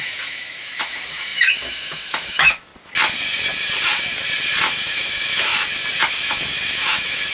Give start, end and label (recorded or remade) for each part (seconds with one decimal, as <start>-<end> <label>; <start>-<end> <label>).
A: 0.0-2.7 remade; 2.7-4.6 recorded; 4.6-5.5 remade; 5.5-6.1 recorded; 6.1-7.3 remade